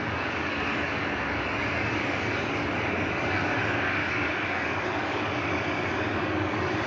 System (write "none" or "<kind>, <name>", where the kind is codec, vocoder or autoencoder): codec, DAC